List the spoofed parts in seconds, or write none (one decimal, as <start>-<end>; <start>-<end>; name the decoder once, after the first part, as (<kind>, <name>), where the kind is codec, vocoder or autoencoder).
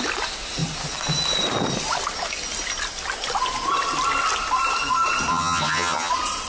5.3-6.1 (vocoder, HiFi-GAN)